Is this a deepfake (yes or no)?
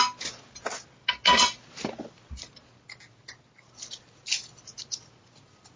no